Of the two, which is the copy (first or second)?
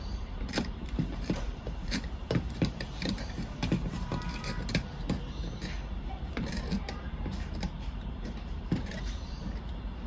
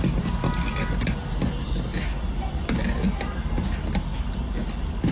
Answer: first